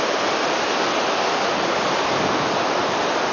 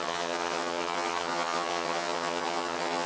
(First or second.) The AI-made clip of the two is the second